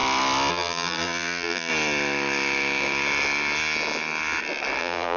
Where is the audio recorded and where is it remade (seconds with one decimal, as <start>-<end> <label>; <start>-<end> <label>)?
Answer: 0.0-0.5 recorded; 0.5-1.7 remade; 1.7-4.8 recorded; 4.8-5.2 remade